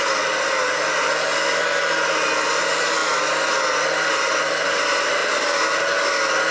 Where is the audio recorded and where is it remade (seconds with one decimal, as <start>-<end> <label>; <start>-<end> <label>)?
0.0-6.5 recorded